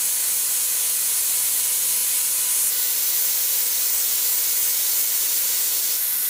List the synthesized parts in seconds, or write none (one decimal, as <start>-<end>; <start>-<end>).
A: none